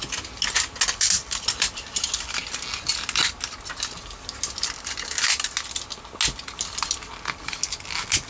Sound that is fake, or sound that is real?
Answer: real